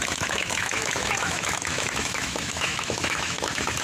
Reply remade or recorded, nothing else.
remade